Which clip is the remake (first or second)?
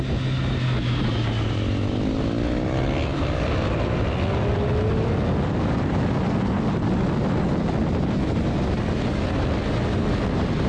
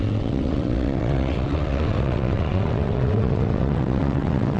second